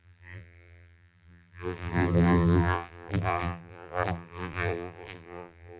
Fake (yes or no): yes